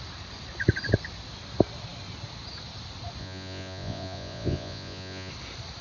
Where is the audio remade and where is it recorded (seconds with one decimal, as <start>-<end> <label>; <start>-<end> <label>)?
0.0-3.2 recorded; 3.2-5.3 remade; 5.3-5.8 recorded